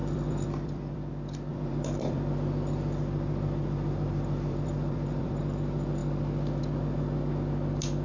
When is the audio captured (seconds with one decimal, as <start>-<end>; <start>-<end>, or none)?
1.1-1.5; 5.4-8.0